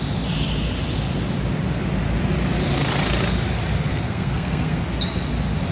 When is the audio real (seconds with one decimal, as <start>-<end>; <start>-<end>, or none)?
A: 0.0-3.9; 4.8-5.7